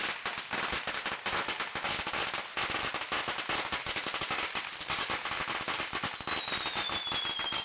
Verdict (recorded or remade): recorded